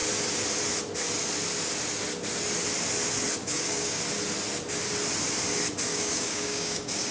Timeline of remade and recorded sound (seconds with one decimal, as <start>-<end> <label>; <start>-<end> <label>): 0.0-3.4 recorded; 3.4-4.0 remade; 4.0-5.9 recorded; 5.9-7.1 remade